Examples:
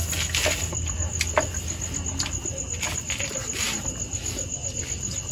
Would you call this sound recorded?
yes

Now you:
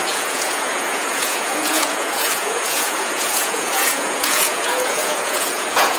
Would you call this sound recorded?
no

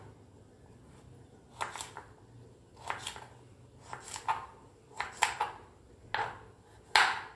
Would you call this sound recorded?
yes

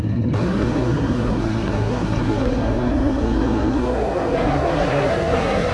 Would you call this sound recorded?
no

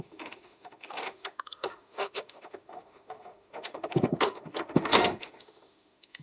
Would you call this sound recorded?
no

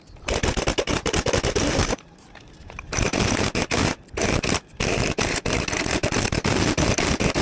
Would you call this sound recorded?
yes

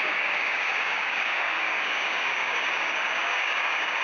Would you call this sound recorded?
no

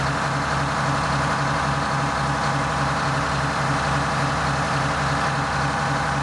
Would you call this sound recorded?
yes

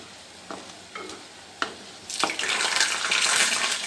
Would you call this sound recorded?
yes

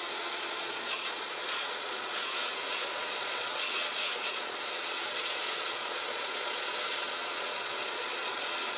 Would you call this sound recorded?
no